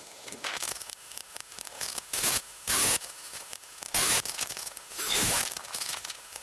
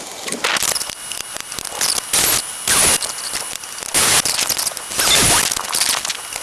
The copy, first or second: first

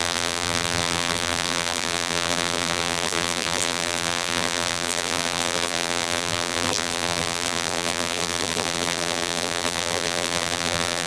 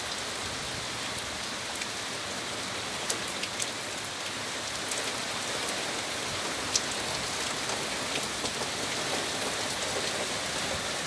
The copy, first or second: first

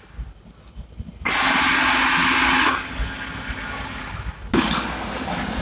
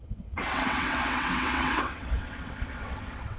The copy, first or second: second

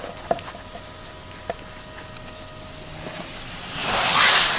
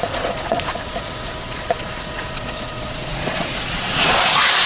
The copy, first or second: second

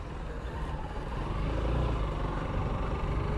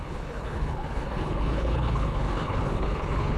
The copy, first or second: second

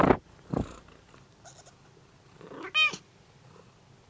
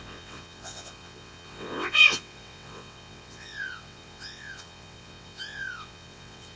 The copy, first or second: second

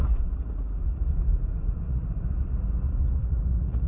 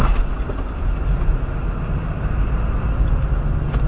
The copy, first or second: first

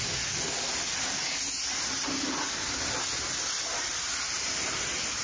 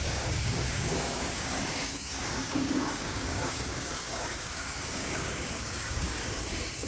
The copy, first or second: second